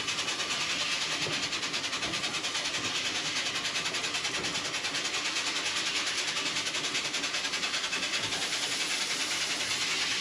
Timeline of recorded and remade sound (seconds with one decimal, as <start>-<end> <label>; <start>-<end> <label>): 0.0-10.2 recorded